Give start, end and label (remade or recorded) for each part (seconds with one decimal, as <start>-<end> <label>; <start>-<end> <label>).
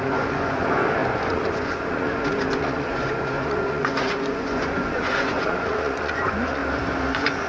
0.0-6.6 remade; 6.6-7.1 recorded; 7.1-7.5 remade